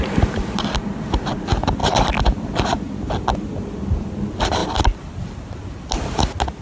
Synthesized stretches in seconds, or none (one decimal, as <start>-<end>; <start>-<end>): none